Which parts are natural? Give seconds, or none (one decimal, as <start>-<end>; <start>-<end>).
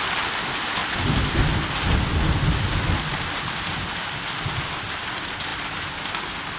0.0-6.6